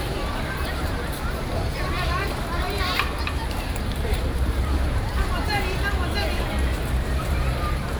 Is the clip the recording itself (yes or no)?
no